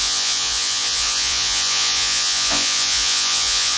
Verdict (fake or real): fake